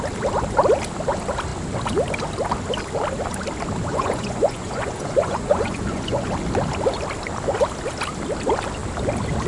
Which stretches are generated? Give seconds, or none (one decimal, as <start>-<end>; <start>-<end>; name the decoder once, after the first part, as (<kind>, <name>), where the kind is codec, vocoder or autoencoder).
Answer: 3.9-6.3 (vocoder, Vocos)